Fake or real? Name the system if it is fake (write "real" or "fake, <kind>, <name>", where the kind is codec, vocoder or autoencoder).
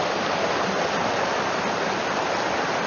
real